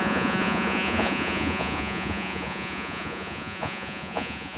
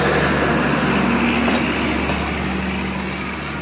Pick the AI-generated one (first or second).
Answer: first